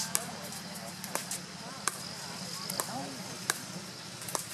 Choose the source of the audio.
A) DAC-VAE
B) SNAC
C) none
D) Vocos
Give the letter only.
C